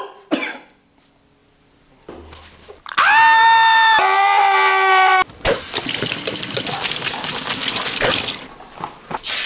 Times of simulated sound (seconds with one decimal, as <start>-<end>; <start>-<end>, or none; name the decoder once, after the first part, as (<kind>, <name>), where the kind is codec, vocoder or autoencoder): none